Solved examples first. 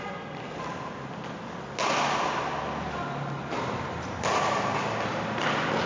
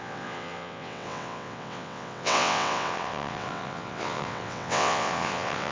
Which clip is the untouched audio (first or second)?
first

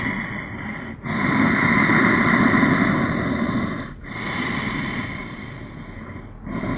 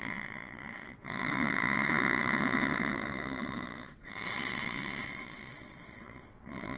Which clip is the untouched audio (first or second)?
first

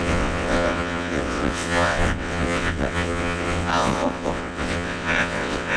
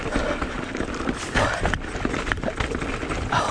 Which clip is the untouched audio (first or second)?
second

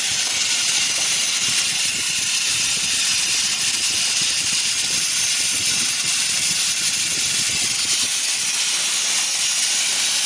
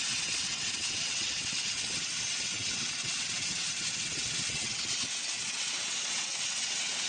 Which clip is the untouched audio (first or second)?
first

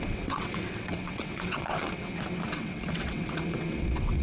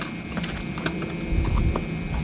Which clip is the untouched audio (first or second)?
second